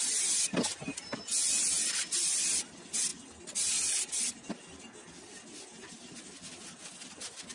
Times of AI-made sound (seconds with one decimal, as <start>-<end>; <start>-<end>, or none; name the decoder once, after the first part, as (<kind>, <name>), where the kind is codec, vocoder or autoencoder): none